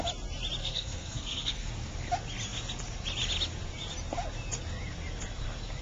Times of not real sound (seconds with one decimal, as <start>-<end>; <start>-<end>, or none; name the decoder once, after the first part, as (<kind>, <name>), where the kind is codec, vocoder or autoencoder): 0.6-1.7 (codec, SNAC)